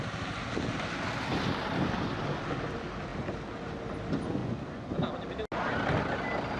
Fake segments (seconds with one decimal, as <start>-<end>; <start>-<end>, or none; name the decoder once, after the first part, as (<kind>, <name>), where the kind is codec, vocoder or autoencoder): 4.4-4.9 (vocoder, Vocos)